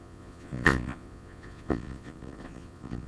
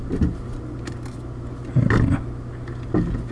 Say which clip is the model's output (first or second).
first